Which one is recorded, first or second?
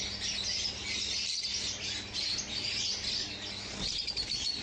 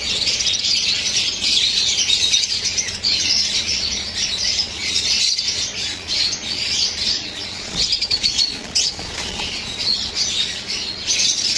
first